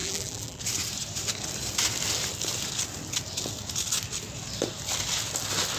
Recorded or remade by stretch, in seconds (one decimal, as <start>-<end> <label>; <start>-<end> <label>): 0.0-0.6 remade; 0.6-5.8 recorded